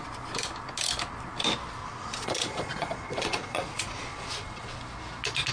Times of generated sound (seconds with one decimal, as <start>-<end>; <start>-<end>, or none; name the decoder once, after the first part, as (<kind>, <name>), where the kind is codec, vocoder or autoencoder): 1.8-4.8 (vocoder, Vocos)